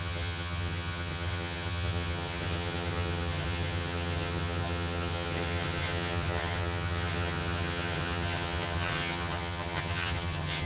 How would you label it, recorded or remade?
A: remade